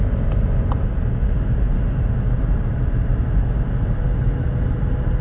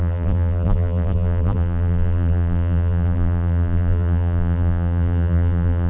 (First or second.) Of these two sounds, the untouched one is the first